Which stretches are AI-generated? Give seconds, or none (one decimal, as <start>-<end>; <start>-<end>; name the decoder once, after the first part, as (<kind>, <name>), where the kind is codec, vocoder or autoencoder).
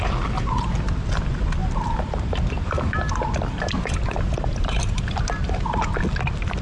1.6-2.4 (vocoder, BigVGAN v2); 4.5-5.2